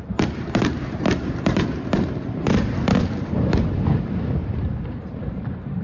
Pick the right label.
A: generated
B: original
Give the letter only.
A